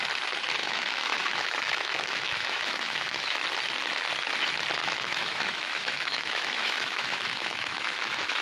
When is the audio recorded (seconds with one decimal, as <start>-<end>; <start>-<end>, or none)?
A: 0.0-0.6; 3.4-4.8